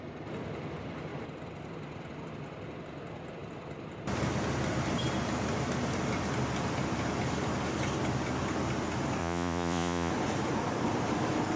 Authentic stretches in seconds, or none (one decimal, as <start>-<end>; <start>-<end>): 0.0-9.2; 10.1-11.6